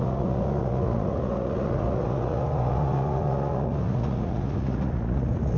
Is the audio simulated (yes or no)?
yes